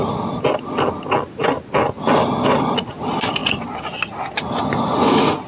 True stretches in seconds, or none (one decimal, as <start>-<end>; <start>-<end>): 0.0-5.5